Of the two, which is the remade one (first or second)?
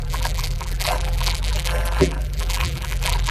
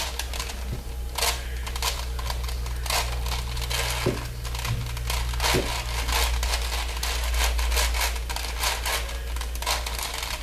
first